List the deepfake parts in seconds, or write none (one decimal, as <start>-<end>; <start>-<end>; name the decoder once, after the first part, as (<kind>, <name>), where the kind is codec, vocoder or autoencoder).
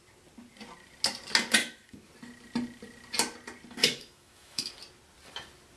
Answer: 1.6-2.1 (autoencoder, DAC-VAE); 3.8-4.7